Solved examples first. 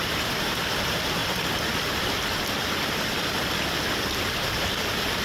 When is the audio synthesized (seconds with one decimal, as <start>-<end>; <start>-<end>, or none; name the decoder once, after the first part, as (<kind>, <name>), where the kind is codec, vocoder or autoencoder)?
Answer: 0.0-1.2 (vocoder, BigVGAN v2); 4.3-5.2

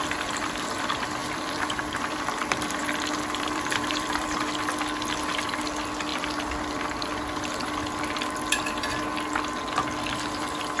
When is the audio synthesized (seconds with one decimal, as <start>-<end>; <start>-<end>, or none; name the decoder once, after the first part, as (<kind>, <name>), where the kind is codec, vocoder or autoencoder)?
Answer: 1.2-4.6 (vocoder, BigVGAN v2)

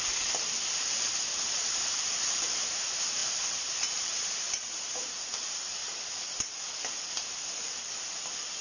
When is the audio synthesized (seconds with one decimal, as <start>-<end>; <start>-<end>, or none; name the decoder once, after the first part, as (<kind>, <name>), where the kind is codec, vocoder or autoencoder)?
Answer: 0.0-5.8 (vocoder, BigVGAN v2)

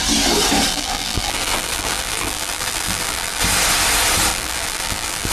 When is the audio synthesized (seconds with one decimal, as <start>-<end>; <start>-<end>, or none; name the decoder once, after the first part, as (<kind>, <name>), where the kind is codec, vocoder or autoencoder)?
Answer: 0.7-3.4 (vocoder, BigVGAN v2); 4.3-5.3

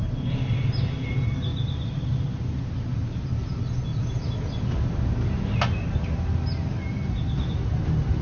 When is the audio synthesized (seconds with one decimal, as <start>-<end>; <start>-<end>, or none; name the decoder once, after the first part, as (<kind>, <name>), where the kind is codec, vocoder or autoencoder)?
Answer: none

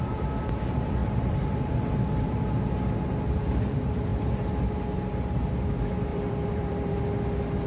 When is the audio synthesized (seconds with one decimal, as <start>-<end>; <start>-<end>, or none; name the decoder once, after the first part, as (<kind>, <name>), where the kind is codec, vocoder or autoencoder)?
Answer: 1.0-1.7 (vocoder, BigVGAN v2); 6.1-7.0

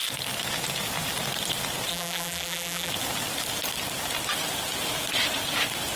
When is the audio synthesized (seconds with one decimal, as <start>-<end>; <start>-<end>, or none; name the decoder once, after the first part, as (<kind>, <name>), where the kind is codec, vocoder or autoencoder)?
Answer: 1.9-2.9 (vocoder, BigVGAN v2)